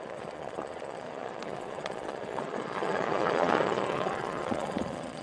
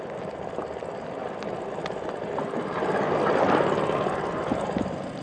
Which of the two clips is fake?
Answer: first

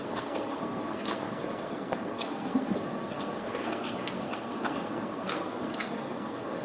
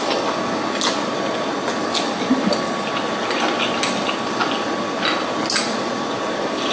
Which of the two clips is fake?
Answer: first